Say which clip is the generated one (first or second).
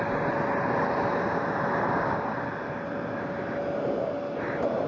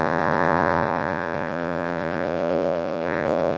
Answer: second